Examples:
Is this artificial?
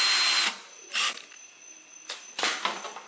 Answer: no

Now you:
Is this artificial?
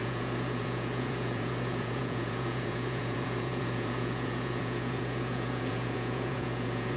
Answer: yes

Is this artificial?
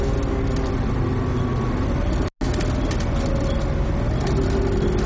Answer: no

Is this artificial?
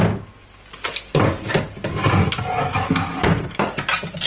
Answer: no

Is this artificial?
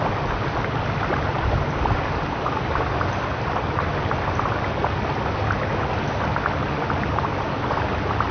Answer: no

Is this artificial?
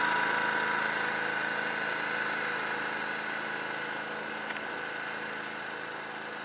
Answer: no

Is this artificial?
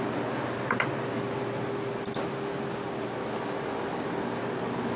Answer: no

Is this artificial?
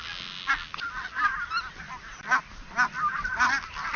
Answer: no